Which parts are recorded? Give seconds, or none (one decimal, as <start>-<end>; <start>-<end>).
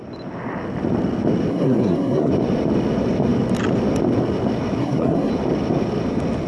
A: 0.0-1.5; 2.3-4.8; 5.3-6.5